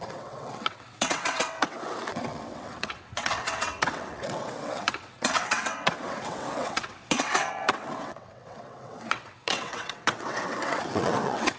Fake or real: fake